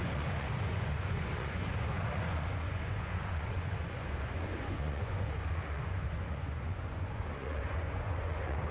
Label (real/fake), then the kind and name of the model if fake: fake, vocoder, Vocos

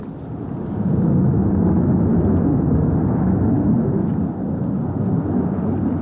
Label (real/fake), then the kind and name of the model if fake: real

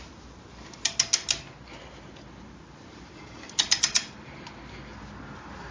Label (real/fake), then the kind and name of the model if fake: real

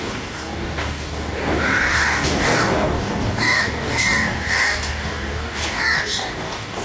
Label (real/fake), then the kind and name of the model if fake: fake, codec, DAC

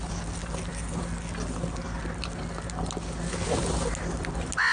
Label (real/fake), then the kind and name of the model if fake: real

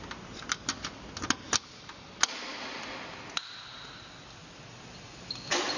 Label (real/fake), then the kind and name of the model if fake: real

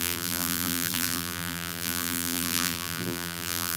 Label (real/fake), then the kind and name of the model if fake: fake, vocoder, BigVGAN v2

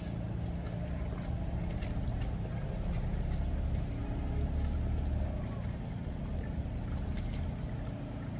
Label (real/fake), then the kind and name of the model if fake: real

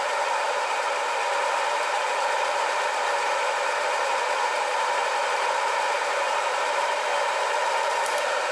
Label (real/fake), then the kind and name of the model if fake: fake, vocoder, BigVGAN v2